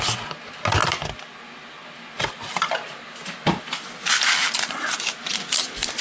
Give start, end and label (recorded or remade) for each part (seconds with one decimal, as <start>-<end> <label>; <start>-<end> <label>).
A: 0.0-6.0 recorded